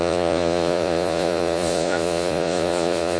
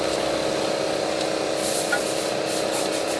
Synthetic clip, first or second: first